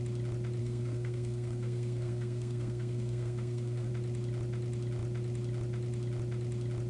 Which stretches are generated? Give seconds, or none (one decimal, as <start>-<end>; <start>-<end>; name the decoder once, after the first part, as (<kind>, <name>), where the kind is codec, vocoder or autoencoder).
0.6-3.9 (codec, SNAC)